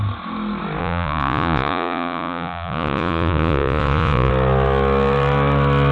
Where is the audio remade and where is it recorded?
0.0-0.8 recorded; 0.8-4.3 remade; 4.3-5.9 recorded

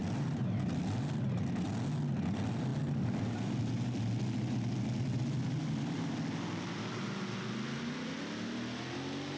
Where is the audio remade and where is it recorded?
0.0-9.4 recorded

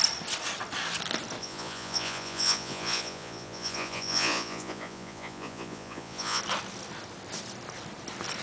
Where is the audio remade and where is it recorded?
0.0-1.4 recorded; 1.4-6.4 remade; 6.4-8.4 recorded